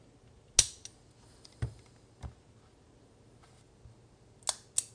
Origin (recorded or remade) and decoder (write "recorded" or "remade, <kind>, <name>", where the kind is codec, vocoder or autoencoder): recorded